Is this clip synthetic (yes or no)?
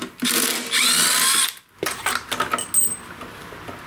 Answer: no